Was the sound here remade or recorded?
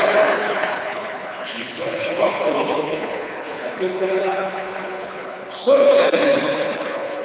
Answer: remade